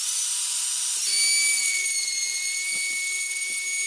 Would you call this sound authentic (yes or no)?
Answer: yes